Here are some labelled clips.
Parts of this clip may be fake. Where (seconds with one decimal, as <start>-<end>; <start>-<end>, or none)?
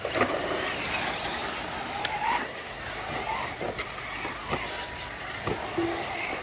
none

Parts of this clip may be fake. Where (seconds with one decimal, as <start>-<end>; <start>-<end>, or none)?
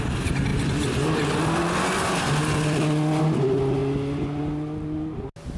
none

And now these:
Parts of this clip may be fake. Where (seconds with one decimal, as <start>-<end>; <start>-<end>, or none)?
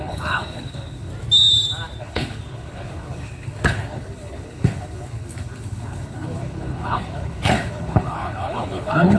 0.0-1.1; 2.0-9.2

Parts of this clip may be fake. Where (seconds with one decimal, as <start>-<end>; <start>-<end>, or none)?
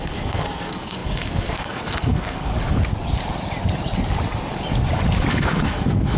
0.0-2.5; 5.3-6.2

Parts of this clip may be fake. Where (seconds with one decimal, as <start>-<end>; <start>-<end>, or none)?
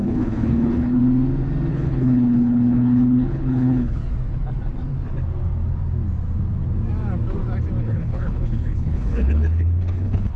0.0-1.0; 1.7-4.0; 7.8-10.4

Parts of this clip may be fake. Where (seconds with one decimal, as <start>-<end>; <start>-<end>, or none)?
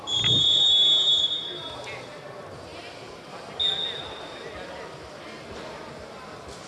none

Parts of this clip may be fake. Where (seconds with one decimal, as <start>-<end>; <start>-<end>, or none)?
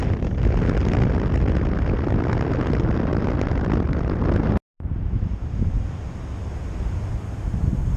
none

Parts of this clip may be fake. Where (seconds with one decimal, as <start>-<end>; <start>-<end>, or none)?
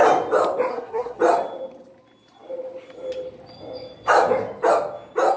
0.7-1.2